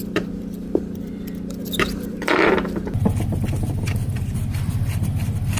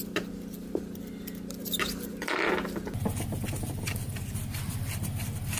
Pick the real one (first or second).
second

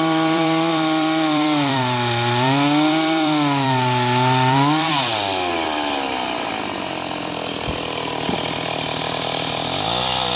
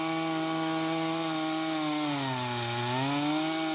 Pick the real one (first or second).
second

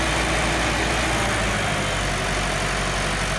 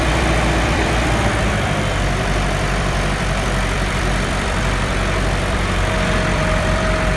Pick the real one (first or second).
first